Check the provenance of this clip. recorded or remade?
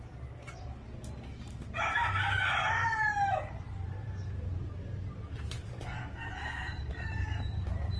remade